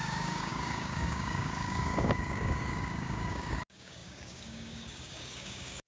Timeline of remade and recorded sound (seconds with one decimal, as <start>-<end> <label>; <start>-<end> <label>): 0.0-5.9 remade